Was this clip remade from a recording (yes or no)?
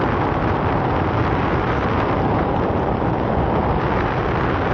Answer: no